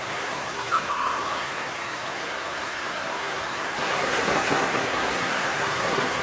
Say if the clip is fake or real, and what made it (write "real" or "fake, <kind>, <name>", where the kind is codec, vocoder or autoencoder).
fake, codec, SNAC